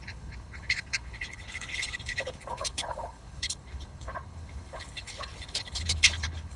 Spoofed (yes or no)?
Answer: yes